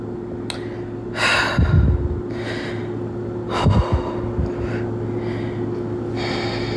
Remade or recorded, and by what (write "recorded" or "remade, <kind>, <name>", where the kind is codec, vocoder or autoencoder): recorded